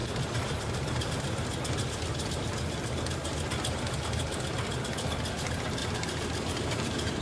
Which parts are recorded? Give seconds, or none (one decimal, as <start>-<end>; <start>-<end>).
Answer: 1.1-5.8; 6.7-7.2